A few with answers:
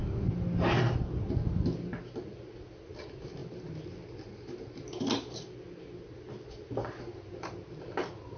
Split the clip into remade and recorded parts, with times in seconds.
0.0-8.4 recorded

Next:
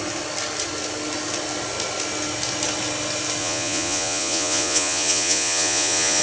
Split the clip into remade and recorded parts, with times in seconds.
0.0-3.4 recorded; 3.4-6.2 remade

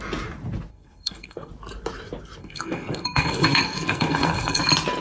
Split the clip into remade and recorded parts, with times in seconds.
0.0-0.7 recorded; 0.7-1.5 remade; 1.5-2.4 recorded; 2.4-4.6 remade; 4.6-5.0 recorded